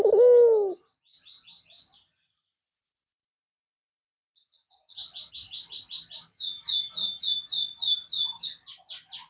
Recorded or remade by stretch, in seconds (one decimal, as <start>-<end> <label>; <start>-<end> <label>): 0.0-9.3 recorded